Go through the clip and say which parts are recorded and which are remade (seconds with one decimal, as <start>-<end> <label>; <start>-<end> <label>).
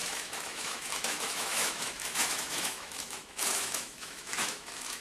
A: 0.0-5.0 remade